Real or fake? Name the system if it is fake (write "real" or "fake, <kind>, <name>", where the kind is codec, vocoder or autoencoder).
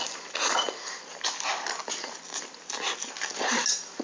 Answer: real